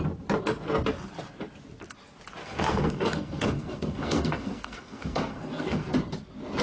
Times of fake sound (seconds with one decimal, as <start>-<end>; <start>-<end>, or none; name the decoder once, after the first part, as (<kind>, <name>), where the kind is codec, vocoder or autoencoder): 2.4-5.9 (codec, SNAC)